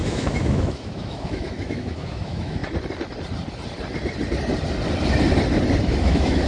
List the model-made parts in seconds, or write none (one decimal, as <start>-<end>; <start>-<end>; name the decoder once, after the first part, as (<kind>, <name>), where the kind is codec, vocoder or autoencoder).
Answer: 0.0-2.6 (autoencoder, DAC-VAE); 6.0-6.5